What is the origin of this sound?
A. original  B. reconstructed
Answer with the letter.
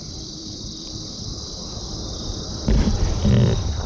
B